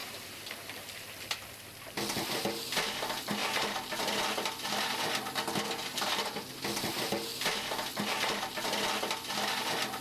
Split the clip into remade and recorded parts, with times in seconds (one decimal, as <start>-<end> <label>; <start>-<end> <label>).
0.0-1.2 remade; 1.2-10.0 recorded